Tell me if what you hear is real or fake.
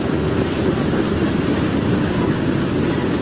real